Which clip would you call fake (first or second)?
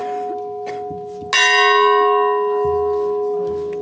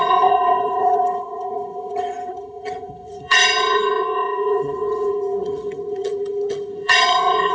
second